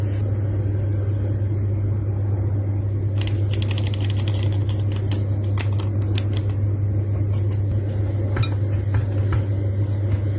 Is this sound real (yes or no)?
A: yes